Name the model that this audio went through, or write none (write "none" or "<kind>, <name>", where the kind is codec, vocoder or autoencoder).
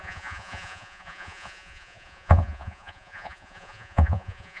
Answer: vocoder, Vocos